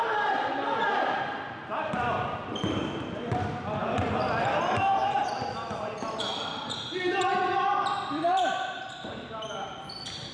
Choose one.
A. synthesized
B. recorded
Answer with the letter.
A